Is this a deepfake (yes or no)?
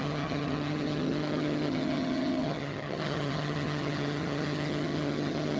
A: yes